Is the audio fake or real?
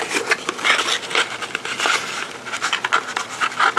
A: real